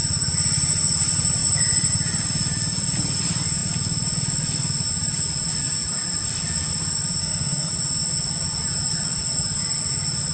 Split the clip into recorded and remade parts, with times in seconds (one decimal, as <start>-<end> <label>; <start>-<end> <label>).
0.0-7.2 recorded; 7.2-7.7 remade; 7.7-10.3 recorded